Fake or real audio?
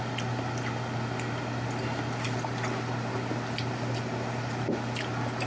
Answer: real